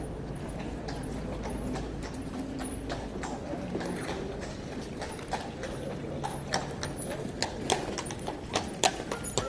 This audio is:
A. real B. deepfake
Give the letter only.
A